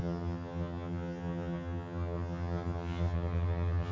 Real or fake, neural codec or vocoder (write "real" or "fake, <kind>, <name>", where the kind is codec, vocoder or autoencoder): fake, vocoder, HiFi-GAN